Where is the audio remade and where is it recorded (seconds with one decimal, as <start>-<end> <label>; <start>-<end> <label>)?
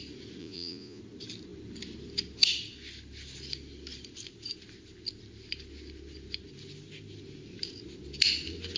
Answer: 0.0-0.4 recorded; 0.4-1.0 remade; 1.0-8.8 recorded